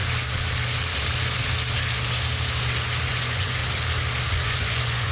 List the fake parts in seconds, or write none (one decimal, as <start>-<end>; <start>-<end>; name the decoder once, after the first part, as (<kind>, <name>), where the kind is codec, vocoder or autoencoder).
3.1-3.6 (vocoder, Vocos); 4.3-5.1